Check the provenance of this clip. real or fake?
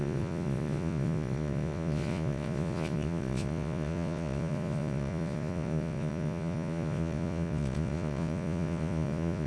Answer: fake